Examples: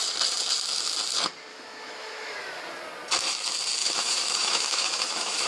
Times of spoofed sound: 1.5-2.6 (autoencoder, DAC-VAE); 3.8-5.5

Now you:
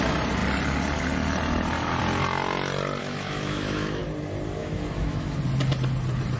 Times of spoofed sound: 3.0-4.0 (autoencoder, DAC-VAE); 4.6-5.4